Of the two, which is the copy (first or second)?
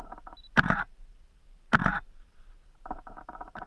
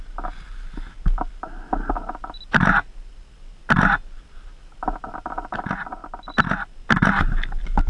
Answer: first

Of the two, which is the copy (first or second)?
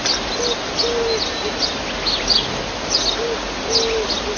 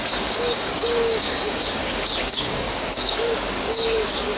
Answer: second